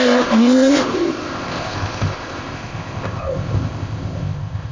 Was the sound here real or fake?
fake